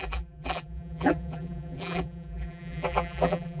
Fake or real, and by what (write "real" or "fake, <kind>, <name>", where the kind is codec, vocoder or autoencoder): fake, vocoder, BigVGAN v2